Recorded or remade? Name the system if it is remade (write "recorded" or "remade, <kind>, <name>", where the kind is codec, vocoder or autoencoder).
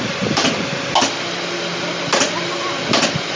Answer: recorded